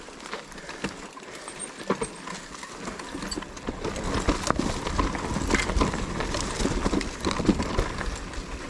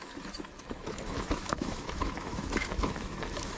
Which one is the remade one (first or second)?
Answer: second